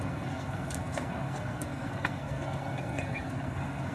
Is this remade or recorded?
remade